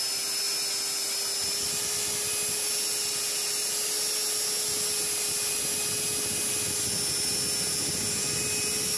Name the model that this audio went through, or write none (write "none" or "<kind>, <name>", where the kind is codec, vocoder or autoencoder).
none